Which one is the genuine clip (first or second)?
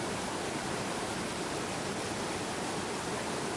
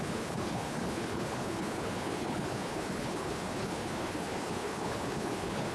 first